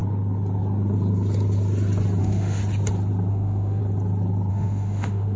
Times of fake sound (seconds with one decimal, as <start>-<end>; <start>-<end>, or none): 2.2-2.6; 3.3-3.8; 4.5-5.4